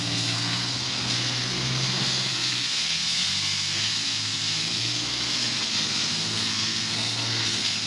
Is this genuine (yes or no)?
no